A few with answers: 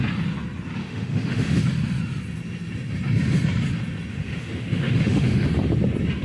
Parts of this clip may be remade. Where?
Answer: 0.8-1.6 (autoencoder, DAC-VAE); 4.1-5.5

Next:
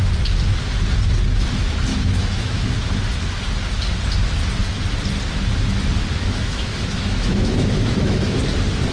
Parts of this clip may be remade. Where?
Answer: 1.9-2.7 (autoencoder, DAC-VAE); 6.1-8.4

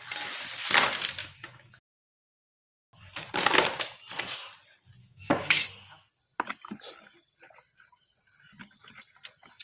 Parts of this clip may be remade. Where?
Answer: 1.2-1.8 (autoencoder, DAC-VAE); 5.0-5.6

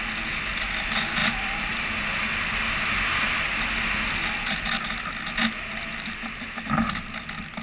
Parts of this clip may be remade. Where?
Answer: none